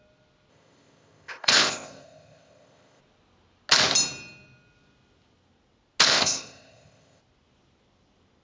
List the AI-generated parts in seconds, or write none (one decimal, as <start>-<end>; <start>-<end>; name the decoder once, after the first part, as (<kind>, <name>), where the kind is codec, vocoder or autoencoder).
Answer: 0.5-3.0 (codec, ZipCodec); 6.1-7.2